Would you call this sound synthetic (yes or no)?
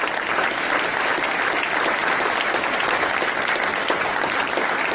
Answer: no